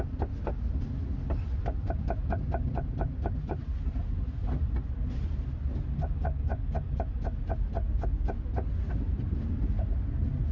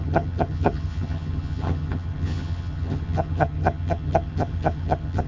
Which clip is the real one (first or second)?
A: first